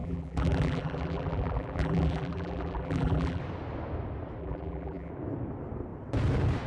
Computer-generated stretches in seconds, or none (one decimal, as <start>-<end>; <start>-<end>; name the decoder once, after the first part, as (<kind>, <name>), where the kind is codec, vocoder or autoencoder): 0.0-3.4 (vocoder, BigVGAN v2); 4.4-5.1